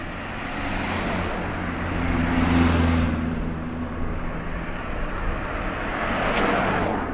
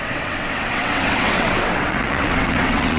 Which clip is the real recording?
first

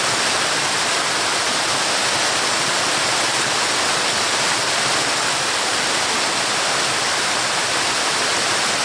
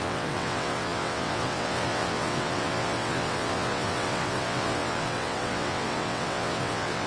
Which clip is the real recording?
first